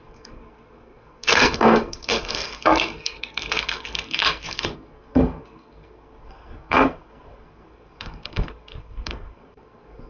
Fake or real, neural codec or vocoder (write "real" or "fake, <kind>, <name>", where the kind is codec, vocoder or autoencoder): fake, codec, SNAC